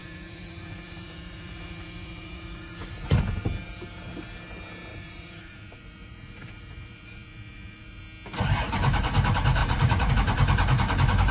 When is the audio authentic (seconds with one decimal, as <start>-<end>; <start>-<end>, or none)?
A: 3.2-4.9; 8.0-9.6; 10.1-11.3